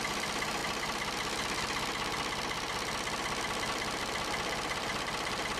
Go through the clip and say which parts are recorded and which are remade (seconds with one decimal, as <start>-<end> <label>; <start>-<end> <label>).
0.0-0.6 remade; 0.6-4.0 recorded; 4.0-5.6 remade